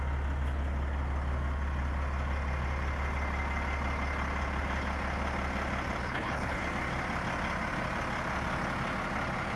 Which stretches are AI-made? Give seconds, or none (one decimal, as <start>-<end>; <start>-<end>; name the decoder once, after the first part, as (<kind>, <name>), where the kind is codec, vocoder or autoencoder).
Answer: 6.0-6.6 (codec, HILCodec)